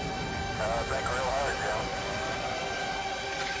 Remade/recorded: recorded